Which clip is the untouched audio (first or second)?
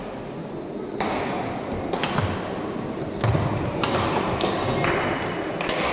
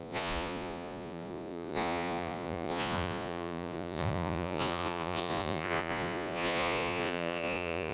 first